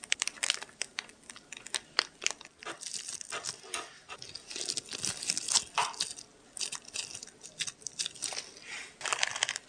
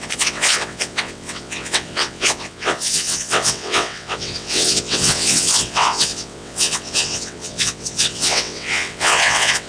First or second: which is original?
first